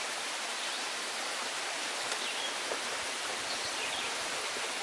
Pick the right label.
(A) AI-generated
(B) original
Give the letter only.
A